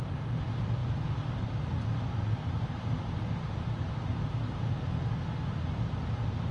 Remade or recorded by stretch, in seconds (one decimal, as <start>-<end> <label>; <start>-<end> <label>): 0.0-6.5 recorded